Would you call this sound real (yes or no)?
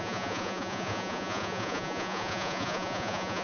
no